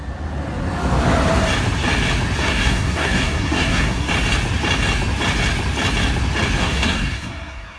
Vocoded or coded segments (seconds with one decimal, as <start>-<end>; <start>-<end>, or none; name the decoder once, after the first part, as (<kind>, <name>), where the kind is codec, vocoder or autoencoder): 2.4-4.1 (codec, SNAC); 6.6-7.8